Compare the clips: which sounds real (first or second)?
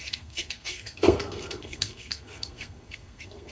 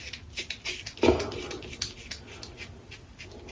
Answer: second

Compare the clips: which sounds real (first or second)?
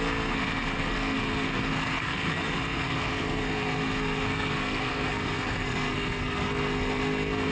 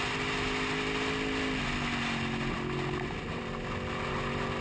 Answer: second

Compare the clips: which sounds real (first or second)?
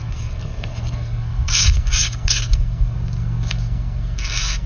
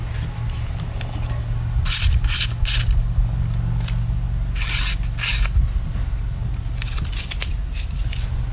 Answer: second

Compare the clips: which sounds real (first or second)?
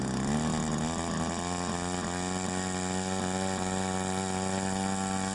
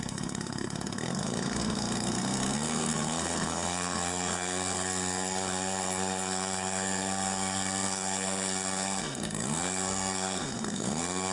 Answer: first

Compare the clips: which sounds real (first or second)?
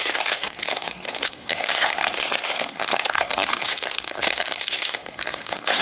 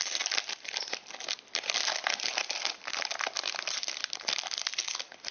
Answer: second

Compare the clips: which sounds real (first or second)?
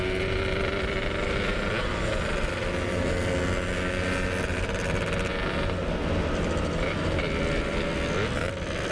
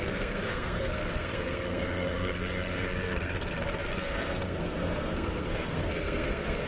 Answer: first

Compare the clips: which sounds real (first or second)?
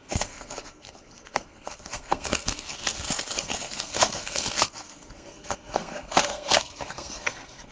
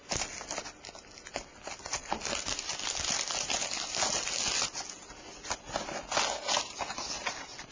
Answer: second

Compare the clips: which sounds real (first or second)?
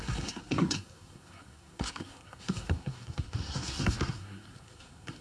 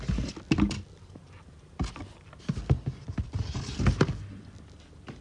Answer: second